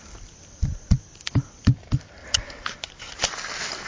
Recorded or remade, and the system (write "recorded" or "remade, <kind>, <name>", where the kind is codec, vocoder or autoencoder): recorded